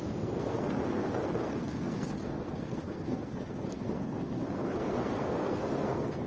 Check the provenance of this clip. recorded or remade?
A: remade